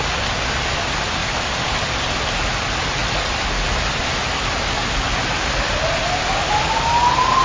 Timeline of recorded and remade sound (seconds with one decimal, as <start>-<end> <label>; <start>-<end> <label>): 0.0-7.4 recorded